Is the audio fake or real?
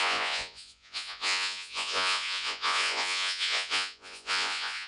fake